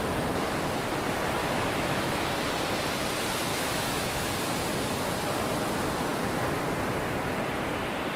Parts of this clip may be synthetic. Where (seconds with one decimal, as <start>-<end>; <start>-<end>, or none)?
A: 1.4-2.3; 3.5-4.3